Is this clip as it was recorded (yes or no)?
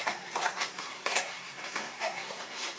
no